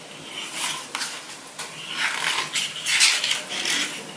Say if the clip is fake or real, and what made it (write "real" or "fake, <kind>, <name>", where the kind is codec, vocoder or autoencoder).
real